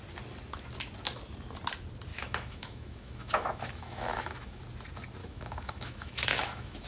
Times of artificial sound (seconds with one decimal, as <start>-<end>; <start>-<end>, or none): 2.1-4.6; 5.2-6.9